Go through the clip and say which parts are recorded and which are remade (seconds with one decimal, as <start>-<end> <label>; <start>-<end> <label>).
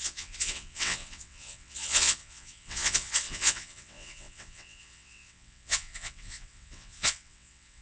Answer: 0.0-7.8 remade